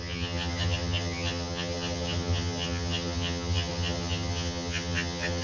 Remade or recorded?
remade